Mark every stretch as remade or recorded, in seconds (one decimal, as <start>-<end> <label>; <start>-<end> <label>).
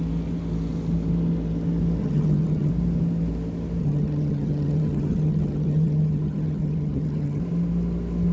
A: 0.0-2.0 recorded; 2.0-2.7 remade; 2.7-3.8 recorded; 3.8-7.4 remade; 7.4-8.3 recorded